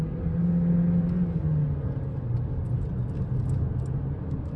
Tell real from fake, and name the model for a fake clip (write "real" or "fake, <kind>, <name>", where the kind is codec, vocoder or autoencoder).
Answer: real